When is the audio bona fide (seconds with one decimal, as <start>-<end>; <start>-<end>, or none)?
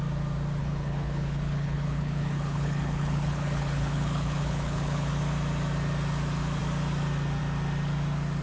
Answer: 0.0-0.6; 5.2-8.4